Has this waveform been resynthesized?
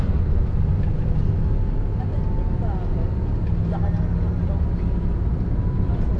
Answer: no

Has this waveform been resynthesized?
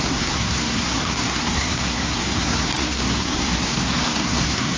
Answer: yes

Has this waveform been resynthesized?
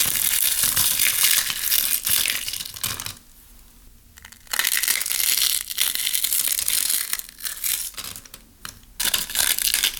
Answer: no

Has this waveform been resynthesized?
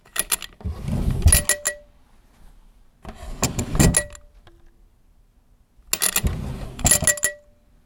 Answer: no